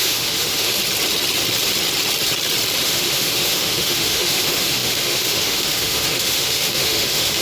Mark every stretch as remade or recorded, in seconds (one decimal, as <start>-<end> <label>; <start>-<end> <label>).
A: 0.0-0.8 remade; 0.8-2.8 recorded; 2.8-7.4 remade